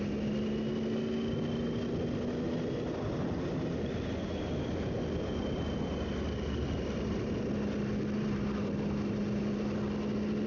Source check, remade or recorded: recorded